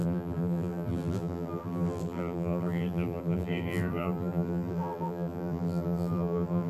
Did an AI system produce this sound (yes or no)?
yes